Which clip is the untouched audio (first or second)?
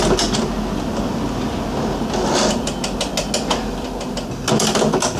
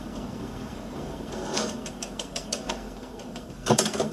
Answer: first